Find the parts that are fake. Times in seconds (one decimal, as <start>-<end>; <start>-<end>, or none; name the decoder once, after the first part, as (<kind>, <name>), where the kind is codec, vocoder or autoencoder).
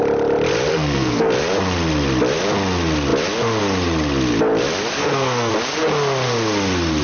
0.7-1.3 (codec, SNAC); 4.9-5.5